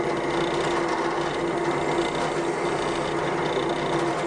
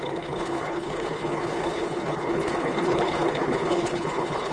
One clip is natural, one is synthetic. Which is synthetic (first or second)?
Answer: second